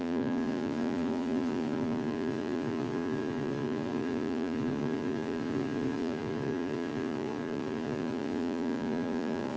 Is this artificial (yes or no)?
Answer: yes